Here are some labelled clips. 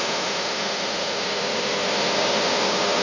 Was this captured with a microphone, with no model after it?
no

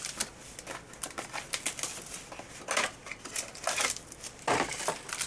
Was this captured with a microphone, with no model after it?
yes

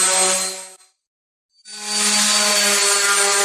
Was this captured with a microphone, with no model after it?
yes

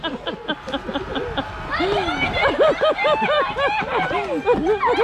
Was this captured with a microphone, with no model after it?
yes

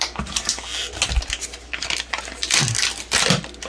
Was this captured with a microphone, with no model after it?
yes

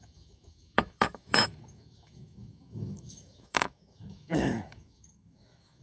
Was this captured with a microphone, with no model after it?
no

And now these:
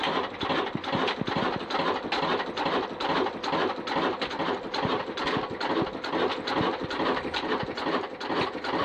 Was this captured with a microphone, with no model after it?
yes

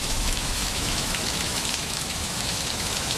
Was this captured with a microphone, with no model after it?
no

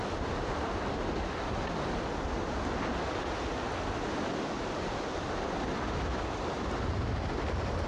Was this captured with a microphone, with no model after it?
yes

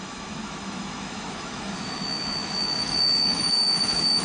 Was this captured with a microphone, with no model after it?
no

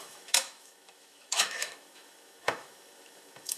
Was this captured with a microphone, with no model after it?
no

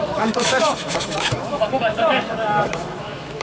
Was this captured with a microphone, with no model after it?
no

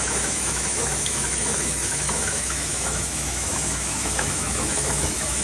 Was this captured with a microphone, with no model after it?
no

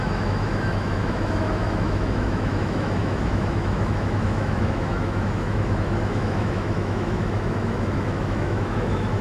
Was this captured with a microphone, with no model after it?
no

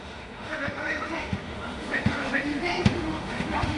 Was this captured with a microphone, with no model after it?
no